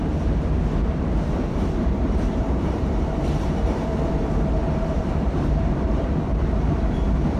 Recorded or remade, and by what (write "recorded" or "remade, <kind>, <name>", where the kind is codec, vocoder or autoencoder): remade, vocoder, BigVGAN v2